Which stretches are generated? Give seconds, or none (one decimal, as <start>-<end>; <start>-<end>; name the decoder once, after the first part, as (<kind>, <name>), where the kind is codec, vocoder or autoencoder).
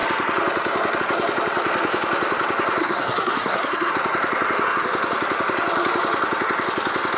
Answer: 2.8-3.9 (codec, SNAC)